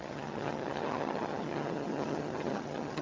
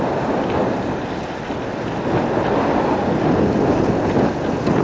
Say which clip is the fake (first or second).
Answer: first